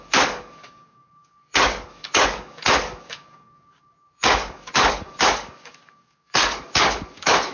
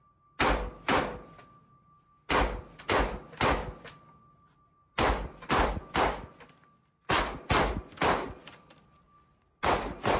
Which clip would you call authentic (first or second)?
second